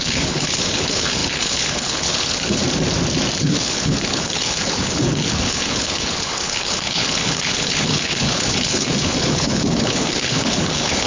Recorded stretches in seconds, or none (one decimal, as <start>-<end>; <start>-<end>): 2.6-3.4